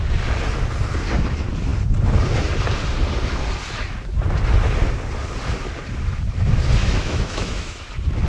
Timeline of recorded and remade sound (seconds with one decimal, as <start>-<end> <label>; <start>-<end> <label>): 0.0-6.8 recorded; 6.8-7.9 remade; 7.9-8.3 recorded